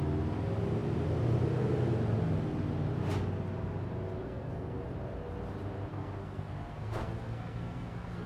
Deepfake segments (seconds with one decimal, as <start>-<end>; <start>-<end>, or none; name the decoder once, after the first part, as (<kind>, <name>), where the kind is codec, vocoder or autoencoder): 4.2-4.8 (codec, SNAC); 5.9-8.3